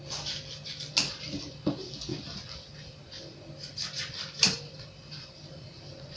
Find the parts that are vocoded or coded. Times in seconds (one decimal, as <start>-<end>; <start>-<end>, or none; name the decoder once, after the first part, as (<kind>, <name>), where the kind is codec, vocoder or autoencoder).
2.1-5.8 (vocoder, BigVGAN v2)

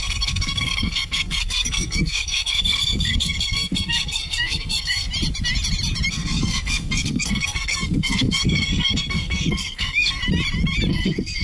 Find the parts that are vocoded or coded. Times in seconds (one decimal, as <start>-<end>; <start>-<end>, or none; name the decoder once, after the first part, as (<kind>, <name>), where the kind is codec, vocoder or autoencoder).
0.0-5.1 (codec, SNAC); 6.1-10.2; 10.9-11.4

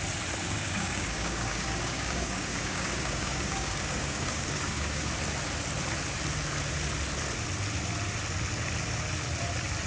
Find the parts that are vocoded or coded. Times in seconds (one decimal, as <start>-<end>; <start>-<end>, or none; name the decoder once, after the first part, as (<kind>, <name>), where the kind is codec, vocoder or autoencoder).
0.4-5.1 (codec, DAC)

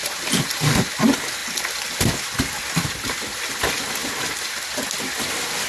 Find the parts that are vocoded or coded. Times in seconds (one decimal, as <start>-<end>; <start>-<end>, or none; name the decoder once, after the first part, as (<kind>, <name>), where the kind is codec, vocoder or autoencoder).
none

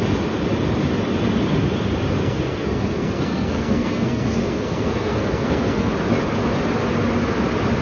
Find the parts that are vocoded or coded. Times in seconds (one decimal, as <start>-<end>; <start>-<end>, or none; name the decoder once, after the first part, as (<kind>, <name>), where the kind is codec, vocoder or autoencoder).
2.2-5.9 (codec, SNAC)

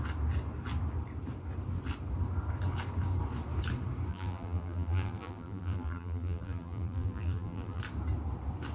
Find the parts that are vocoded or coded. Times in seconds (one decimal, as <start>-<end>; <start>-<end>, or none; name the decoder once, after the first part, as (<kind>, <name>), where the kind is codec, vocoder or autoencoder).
4.1-7.8 (vocoder, BigVGAN v2)